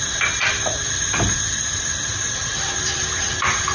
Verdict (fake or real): fake